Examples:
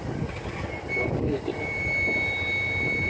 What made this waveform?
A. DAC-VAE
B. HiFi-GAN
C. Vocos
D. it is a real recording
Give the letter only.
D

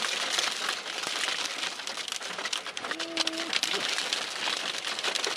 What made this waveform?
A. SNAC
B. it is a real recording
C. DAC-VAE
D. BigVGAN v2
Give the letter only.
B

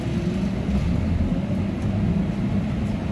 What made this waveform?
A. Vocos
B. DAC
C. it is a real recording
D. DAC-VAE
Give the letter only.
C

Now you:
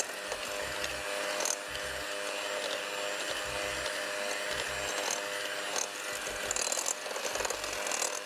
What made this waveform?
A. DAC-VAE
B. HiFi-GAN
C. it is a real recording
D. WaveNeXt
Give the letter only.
C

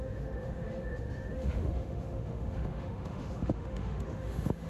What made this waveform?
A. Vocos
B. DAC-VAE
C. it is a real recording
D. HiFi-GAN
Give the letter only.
B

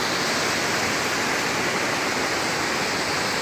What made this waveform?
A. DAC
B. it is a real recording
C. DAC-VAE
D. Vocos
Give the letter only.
B